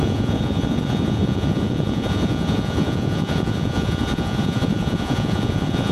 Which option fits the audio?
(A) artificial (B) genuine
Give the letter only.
A